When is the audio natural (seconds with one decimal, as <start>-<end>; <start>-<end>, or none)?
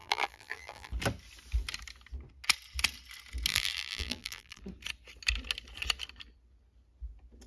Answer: 0.9-3.5; 4.6-7.5